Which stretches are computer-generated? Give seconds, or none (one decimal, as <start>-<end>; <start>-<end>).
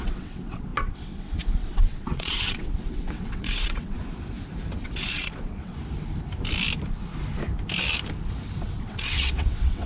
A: 0.0-4.0; 4.8-5.7; 8.8-9.9